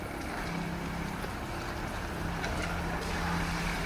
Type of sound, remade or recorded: recorded